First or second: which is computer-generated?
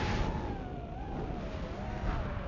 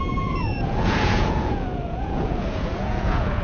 second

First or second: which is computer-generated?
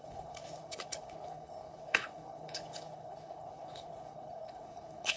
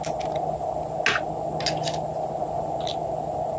first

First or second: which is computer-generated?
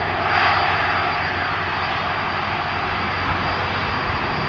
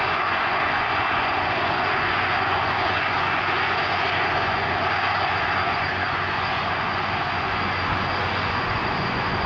second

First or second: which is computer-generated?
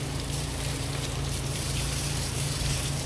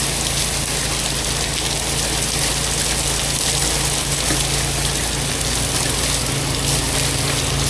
first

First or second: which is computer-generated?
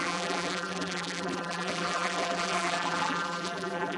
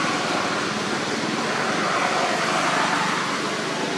first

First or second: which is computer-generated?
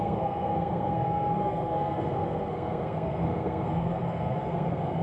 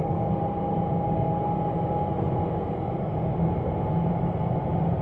first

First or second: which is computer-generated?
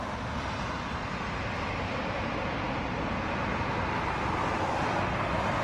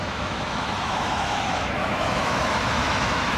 second